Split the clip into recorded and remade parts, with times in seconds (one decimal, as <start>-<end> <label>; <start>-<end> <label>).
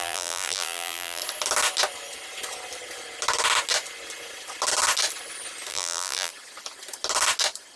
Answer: 0.0-1.2 remade; 1.2-5.7 recorded; 5.7-6.3 remade; 6.3-7.8 recorded